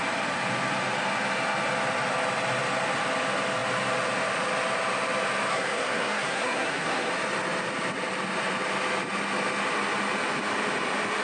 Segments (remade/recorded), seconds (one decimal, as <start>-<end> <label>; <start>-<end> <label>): 0.0-5.5 recorded; 5.5-7.1 remade; 7.1-11.2 recorded